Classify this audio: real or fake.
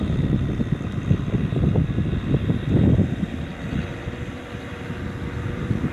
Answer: real